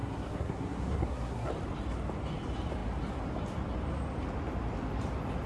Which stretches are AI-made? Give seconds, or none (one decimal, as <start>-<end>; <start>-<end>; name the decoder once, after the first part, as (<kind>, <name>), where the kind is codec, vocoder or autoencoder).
0.0-1.5 (codec, SNAC)